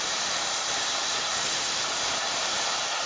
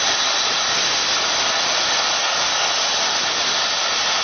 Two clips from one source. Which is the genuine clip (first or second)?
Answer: second